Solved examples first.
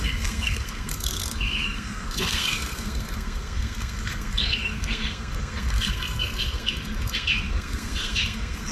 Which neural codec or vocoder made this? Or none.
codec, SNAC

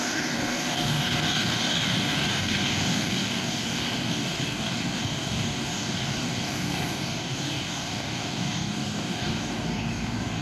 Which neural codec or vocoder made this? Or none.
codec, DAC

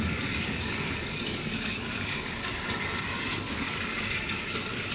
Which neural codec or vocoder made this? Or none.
codec, DAC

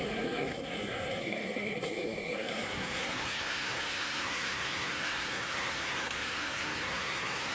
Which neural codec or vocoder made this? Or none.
codec, SNAC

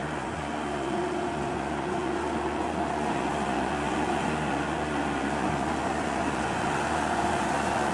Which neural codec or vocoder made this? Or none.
vocoder, Vocos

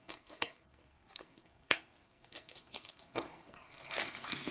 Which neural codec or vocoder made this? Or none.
codec, SNAC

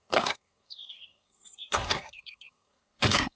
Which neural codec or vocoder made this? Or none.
codec, SNAC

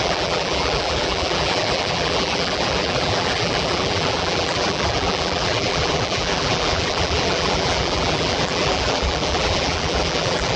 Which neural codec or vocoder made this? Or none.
vocoder, BigVGAN v2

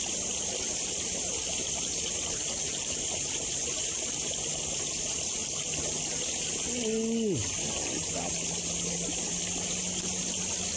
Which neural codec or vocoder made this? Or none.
none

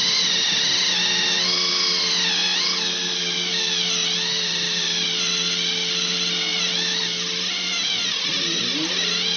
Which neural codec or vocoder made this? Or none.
none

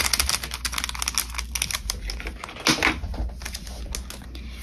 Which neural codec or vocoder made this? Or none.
none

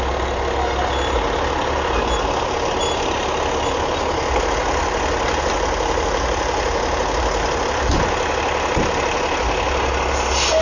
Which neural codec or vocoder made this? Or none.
none